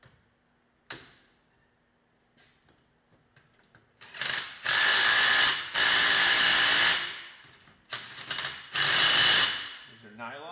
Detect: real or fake real